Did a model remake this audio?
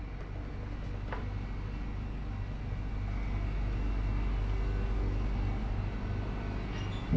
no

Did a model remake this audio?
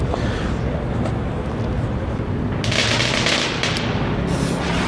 no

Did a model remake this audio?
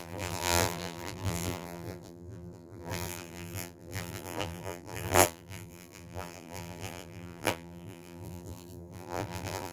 yes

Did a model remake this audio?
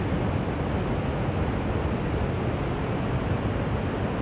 no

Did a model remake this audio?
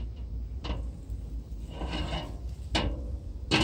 no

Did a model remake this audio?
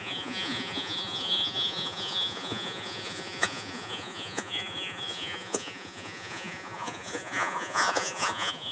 yes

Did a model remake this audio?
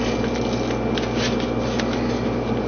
no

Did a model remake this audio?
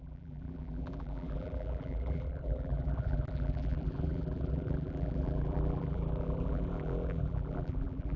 yes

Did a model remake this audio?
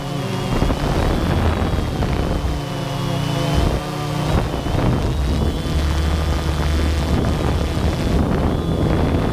no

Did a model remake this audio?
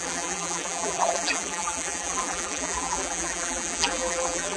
yes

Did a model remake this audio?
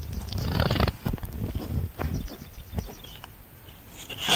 no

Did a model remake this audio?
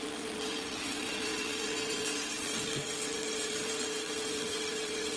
yes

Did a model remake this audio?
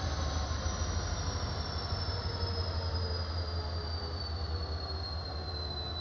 no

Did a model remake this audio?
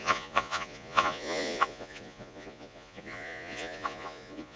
yes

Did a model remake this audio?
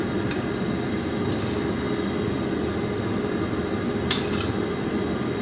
no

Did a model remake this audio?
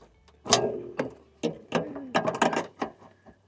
no